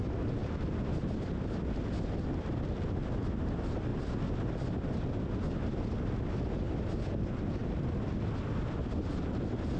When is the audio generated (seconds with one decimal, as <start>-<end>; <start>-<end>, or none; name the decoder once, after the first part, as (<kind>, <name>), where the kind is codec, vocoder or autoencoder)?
none